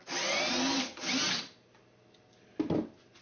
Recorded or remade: recorded